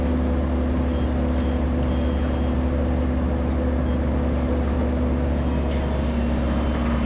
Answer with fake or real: real